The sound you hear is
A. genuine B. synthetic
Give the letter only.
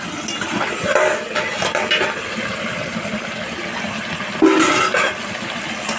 A